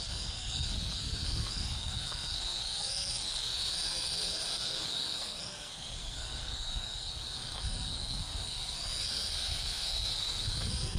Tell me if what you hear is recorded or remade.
remade